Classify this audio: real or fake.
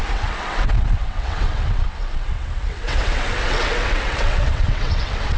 fake